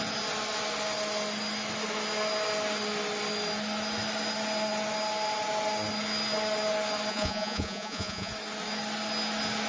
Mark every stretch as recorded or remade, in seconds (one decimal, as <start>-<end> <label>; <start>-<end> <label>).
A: 0.0-7.1 recorded; 7.1-8.3 remade; 8.3-9.7 recorded